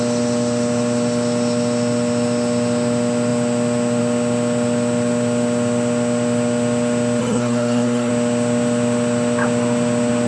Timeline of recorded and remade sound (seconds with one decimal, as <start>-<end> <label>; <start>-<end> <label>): 0.0-7.2 recorded; 7.2-8.1 remade; 8.1-10.3 recorded